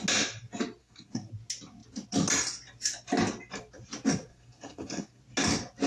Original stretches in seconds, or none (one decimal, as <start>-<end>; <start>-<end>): 0.0-0.8; 1.3-4.3; 5.2-5.9